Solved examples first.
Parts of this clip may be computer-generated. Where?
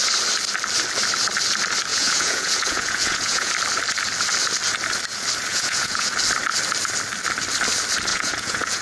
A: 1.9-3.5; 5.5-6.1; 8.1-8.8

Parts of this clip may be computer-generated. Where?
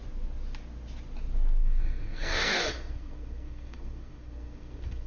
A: 1.6-5.1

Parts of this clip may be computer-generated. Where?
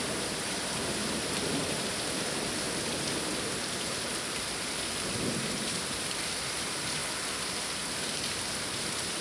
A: 0.0-7.0; 8.0-9.2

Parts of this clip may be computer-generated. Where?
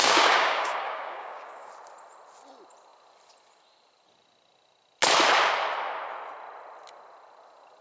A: 0.0-1.7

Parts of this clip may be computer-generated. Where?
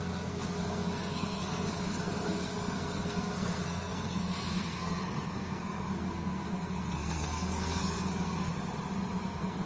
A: 0.0-8.5; 9.2-9.7